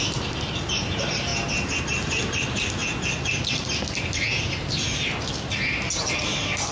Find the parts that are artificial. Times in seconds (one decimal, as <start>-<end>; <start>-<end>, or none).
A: 0.0-1.3; 1.8-2.8; 6.1-6.7